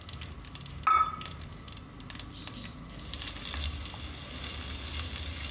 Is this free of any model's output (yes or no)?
yes